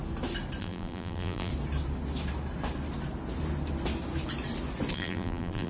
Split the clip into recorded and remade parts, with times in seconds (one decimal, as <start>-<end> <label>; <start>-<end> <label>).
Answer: 0.0-0.6 recorded; 0.6-1.5 remade; 1.5-4.9 recorded; 4.9-5.7 remade